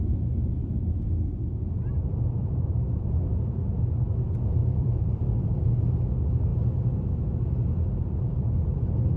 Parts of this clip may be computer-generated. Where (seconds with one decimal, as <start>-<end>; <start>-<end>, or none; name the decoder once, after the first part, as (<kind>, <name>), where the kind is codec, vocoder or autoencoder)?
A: 2.4-3.1 (vocoder, BigVGAN v2); 4.6-5.7